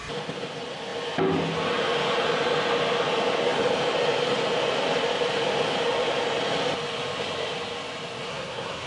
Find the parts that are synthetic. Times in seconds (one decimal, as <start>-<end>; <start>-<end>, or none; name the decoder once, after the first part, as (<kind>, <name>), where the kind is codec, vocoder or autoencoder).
8.3-8.9 (codec, SNAC)